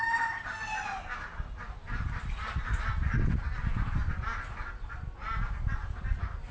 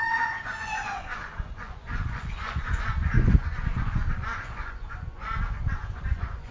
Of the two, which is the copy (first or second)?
second